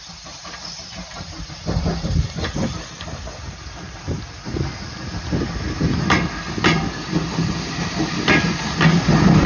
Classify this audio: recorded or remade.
recorded